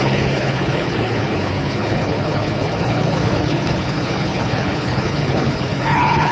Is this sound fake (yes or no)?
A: yes